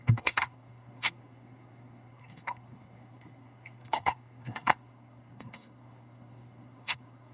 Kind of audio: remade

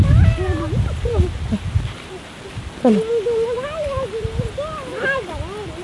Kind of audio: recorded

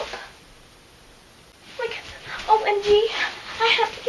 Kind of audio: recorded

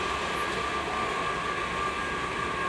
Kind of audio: recorded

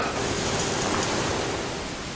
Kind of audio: recorded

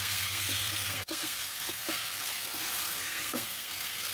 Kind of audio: remade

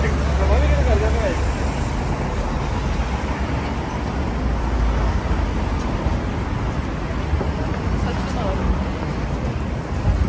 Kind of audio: recorded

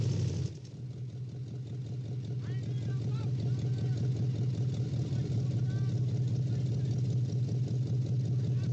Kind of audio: recorded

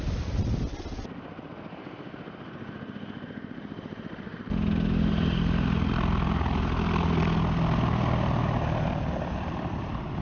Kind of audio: recorded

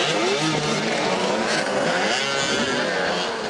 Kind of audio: recorded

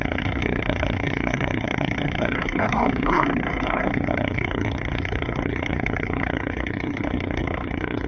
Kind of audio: remade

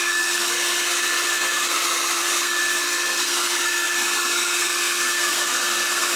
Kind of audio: remade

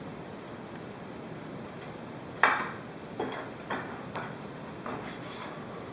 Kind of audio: recorded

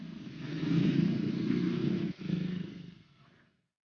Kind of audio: remade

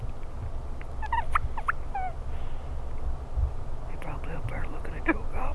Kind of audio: recorded